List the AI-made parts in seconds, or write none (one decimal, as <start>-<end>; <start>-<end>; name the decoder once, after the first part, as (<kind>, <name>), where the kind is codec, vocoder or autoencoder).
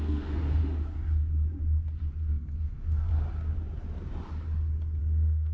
0.0-0.6 (codec, SNAC); 2.3-3.1; 5.0-5.5